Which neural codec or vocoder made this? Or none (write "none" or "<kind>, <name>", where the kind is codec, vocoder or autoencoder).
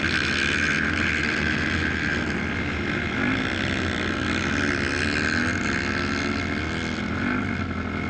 none